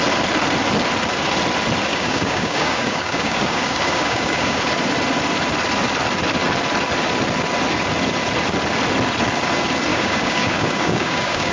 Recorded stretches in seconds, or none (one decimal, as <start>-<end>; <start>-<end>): 0.0-1.9; 4.6-9.9